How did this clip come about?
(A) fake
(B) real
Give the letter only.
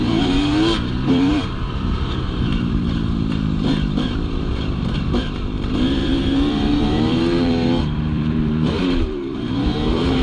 A